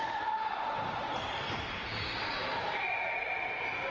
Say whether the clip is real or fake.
fake